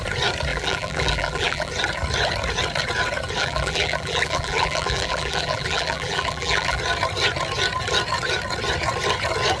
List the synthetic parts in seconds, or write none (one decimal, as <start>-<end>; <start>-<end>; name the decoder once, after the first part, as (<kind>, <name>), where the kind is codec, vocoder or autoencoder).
0.5-1.7 (vocoder, BigVGAN v2); 3.4-6.8